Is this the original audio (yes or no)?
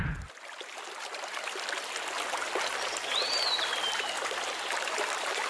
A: yes